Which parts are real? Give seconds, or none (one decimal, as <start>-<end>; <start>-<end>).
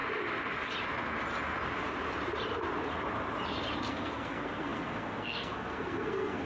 0.0-3.9